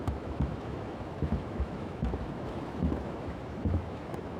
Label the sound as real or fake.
fake